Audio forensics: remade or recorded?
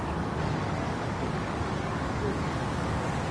remade